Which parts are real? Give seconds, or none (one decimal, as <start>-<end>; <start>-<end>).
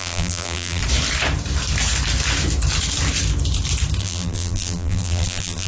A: 0.8-4.0